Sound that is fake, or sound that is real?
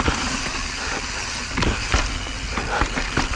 fake